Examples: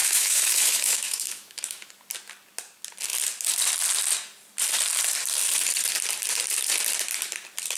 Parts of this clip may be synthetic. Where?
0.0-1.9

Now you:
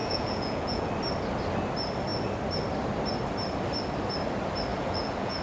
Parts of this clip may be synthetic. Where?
0.0-0.9; 4.7-5.4